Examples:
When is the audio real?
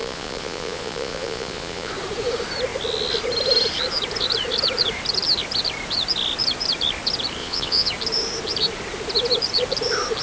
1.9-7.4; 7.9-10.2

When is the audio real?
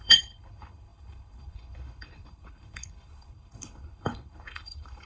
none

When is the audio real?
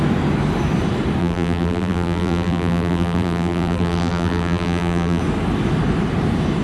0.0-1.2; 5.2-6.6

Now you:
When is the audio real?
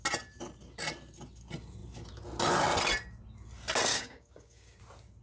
0.0-3.9; 4.8-5.2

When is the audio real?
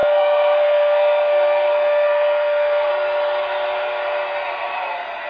2.9-5.3